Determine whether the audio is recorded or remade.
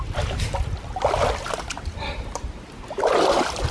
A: recorded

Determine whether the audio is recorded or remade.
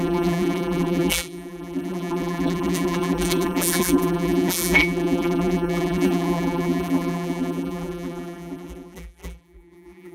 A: remade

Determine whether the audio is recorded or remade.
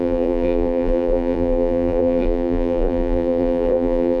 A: remade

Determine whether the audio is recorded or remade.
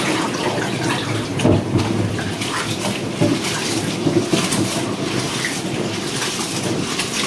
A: remade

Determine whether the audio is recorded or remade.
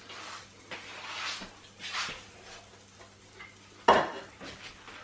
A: recorded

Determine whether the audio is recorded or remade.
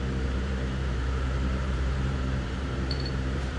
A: remade